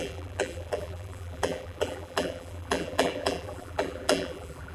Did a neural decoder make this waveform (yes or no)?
yes